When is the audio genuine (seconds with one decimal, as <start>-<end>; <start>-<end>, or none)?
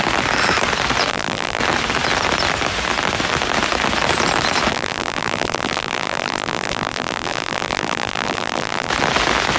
0.0-1.1; 1.6-4.7; 8.9-9.6